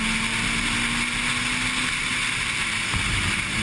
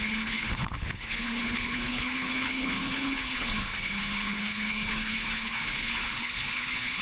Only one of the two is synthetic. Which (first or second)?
second